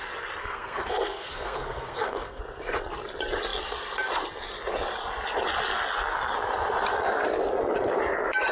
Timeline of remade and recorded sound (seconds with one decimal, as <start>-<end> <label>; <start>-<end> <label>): 0.0-0.4 recorded; 0.4-2.4 remade; 2.4-8.5 recorded